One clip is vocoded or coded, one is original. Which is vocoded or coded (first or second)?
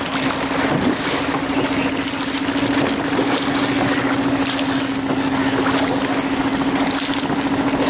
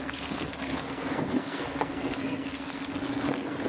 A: second